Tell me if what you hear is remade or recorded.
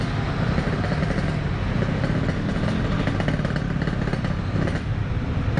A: recorded